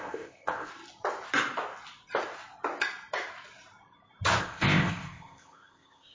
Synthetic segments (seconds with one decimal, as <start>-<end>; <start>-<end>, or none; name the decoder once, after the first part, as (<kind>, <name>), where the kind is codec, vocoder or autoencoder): 0.0-0.7 (codec, ZipCodec); 4.4-6.1